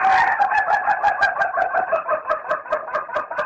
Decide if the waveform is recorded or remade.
recorded